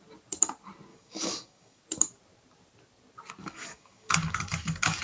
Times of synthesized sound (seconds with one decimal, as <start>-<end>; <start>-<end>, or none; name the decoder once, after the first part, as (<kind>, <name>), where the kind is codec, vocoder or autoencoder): 0.9-1.8 (codec, DAC); 3.4-5.0